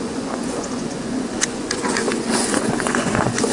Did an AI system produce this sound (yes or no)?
yes